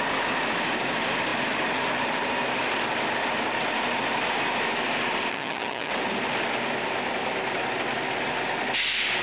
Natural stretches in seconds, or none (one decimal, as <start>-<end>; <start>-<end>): 0.0-5.3; 5.9-9.2